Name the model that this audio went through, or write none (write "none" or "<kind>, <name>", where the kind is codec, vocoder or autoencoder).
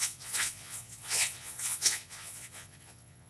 vocoder, Vocos